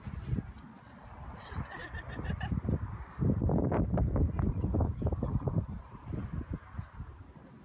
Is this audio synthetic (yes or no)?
no